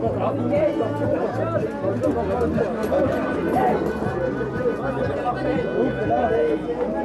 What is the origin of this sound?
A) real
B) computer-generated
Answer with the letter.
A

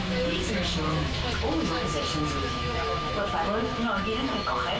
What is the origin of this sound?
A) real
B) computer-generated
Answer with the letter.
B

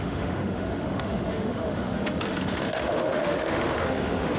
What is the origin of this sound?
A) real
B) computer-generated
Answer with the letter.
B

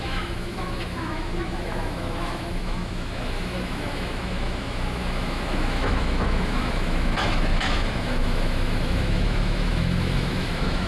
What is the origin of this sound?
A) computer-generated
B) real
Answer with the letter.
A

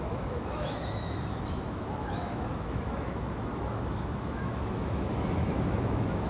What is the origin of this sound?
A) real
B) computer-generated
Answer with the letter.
B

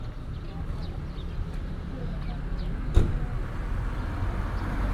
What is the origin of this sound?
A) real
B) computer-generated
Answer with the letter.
A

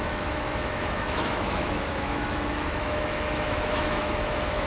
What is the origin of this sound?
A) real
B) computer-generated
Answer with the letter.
B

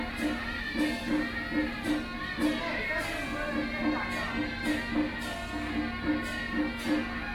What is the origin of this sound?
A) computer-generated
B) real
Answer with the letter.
B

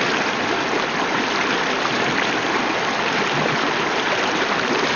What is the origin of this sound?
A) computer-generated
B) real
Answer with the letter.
B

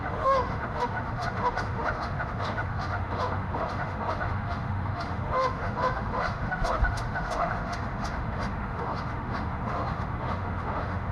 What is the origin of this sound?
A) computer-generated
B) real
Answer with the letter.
A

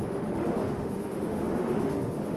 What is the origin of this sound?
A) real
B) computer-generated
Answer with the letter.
B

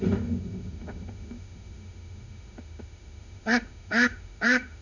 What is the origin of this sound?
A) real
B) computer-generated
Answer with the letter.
B